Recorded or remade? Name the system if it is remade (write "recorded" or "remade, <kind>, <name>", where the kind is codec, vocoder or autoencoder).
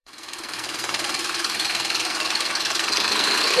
remade, codec, SNAC